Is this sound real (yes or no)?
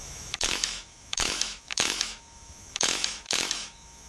no